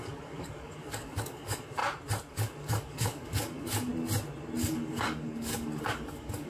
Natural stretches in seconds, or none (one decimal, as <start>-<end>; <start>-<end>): 1.8-2.3; 3.9-4.6